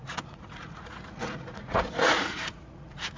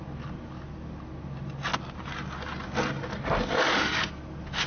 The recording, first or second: second